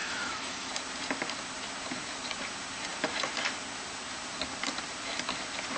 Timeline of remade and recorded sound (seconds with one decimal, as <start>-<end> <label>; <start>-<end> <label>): 0.0-0.7 remade; 0.7-5.8 recorded